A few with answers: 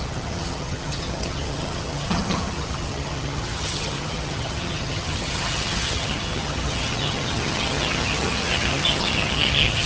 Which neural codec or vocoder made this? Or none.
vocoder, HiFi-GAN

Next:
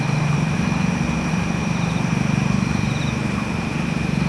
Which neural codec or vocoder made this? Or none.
vocoder, BigVGAN v2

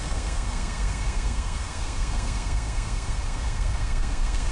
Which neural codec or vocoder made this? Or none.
codec, SNAC